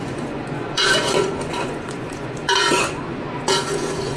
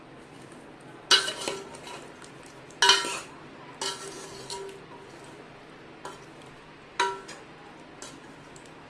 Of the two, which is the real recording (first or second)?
second